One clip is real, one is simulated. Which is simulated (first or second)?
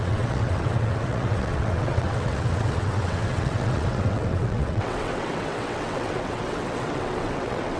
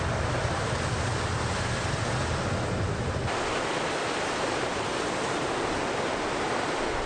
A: first